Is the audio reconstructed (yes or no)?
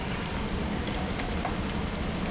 no